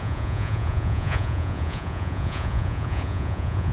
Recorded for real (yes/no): no